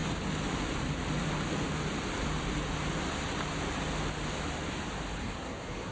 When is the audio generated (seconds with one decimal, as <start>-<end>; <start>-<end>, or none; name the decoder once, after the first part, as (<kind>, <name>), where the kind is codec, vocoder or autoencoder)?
5.2-5.9 (codec, SNAC)